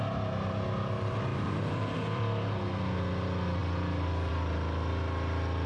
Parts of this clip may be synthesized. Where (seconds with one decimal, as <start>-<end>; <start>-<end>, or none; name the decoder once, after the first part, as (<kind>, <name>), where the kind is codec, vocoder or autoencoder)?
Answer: 1.3-2.5 (vocoder, BigVGAN v2)